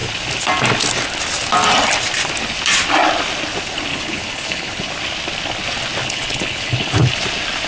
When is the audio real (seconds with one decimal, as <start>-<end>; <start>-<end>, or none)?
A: 0.0-3.9; 4.9-6.0; 7.1-7.7